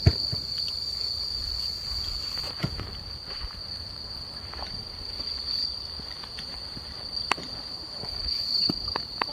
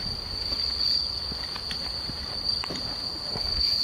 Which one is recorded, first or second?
second